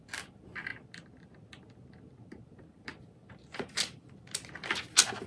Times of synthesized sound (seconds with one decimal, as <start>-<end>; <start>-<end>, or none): none